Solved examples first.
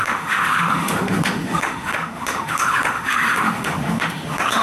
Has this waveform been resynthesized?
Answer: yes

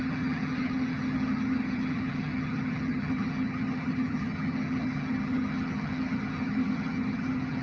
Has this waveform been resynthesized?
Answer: yes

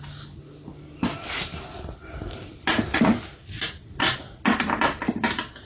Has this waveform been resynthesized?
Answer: no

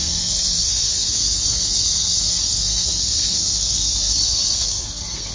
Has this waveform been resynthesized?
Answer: yes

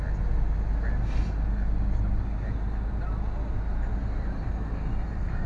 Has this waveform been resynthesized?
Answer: no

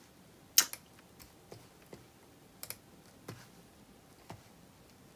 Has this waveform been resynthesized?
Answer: no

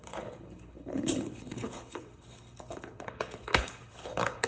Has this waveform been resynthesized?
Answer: yes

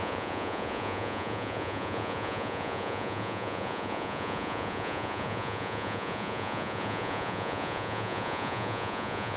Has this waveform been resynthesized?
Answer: yes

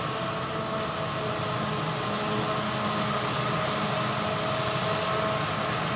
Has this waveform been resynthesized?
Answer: no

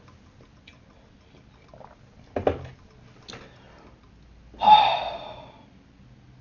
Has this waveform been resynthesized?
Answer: no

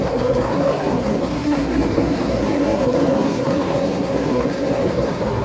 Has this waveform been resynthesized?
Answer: yes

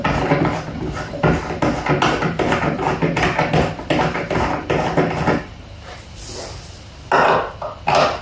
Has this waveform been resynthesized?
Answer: no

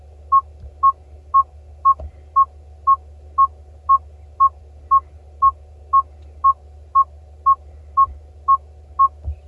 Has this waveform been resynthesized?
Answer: no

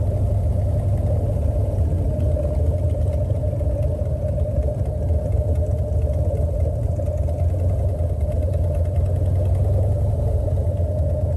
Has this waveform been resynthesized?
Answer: no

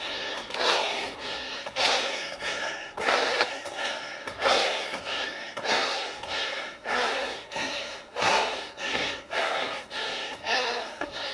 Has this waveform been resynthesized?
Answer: yes